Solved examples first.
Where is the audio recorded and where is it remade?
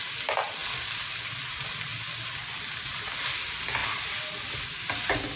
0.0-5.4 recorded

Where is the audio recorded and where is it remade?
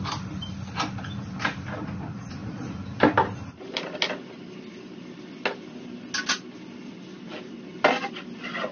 0.0-2.4 recorded; 2.4-4.0 remade; 4.0-8.7 recorded